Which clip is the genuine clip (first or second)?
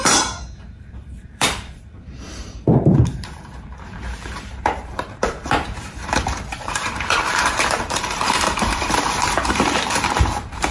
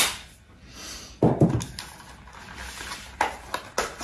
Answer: second